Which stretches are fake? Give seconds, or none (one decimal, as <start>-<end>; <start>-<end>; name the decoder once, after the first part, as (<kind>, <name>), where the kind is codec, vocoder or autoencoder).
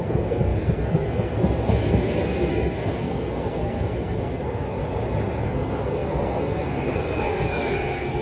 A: 0.0-4.8 (codec, SNAC); 5.4-8.2